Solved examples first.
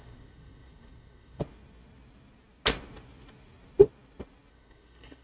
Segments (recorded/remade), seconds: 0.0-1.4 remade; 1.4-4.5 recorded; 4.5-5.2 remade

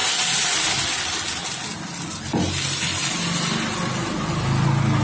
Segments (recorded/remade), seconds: 0.0-5.0 recorded

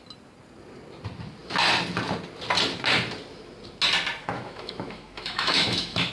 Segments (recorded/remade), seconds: 0.0-4.2 recorded; 4.2-6.1 remade

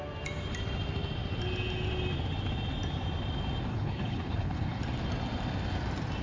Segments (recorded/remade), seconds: 0.0-3.7 recorded; 3.7-4.8 remade; 4.8-6.2 recorded